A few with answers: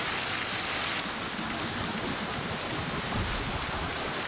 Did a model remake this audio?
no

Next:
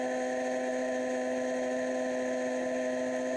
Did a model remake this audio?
no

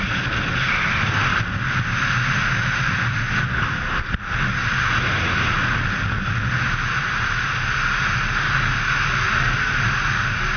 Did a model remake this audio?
no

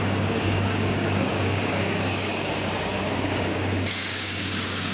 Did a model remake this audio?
yes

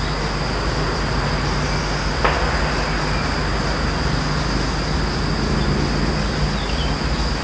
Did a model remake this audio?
no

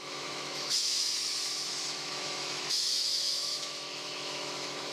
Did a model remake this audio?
yes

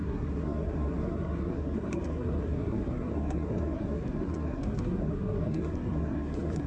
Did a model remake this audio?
yes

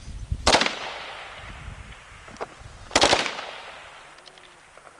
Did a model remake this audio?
yes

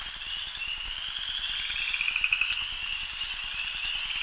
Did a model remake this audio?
no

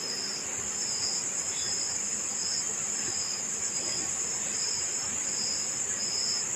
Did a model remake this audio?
no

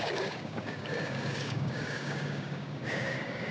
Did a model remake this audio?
yes